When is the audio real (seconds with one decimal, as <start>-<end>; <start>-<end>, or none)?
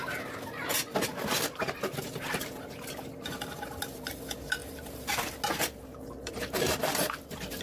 0.0-4.6; 5.3-5.9